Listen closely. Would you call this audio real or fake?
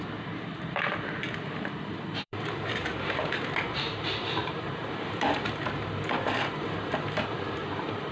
fake